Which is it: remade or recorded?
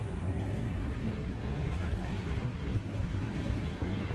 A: remade